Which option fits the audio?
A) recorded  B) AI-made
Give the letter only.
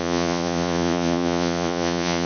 B